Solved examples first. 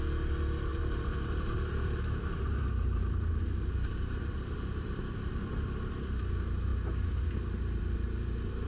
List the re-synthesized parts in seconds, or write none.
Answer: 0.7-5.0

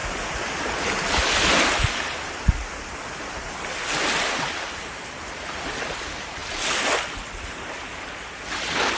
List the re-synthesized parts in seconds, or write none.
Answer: none